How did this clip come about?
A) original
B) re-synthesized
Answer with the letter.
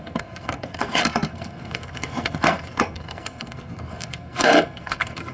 B